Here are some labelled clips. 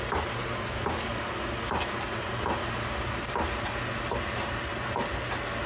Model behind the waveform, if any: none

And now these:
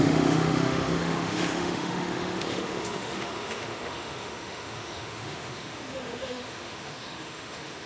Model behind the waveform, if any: autoencoder, DAC-VAE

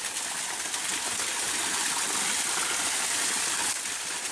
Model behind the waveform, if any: none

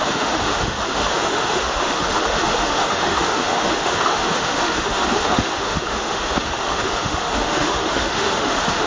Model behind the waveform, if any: autoencoder, DAC-VAE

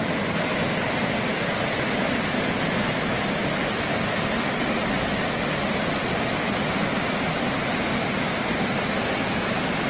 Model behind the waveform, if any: none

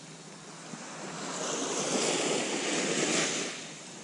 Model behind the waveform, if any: none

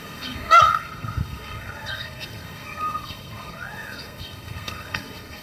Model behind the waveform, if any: codec, SNAC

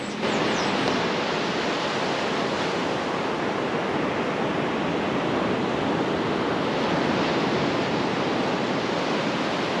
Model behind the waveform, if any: none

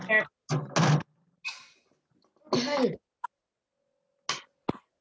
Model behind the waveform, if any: none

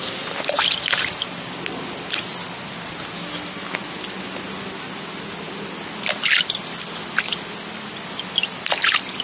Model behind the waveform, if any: none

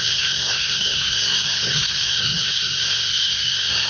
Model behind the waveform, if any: codec, SNAC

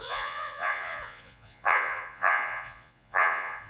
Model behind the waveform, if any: vocoder, Vocos